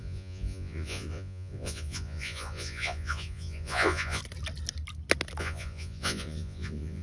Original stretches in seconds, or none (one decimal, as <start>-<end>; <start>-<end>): 4.2-5.4